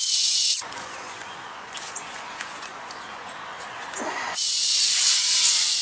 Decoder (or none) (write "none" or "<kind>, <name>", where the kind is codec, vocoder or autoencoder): vocoder, Vocos